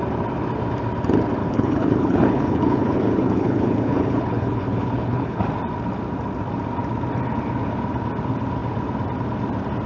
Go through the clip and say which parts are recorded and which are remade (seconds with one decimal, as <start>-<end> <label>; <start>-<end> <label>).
0.0-1.4 recorded; 1.4-5.4 remade; 5.4-9.9 recorded